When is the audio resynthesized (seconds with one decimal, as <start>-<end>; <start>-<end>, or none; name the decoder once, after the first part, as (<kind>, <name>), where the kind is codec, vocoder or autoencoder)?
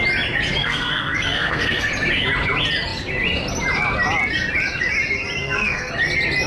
0.6-1.9 (codec, SNAC); 5.4-5.9